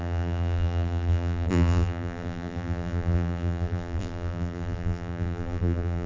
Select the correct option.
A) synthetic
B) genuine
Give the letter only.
A